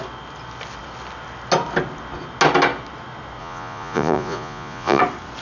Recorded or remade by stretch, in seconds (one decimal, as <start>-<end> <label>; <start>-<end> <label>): 0.0-3.4 recorded; 3.4-5.0 remade; 5.0-5.4 recorded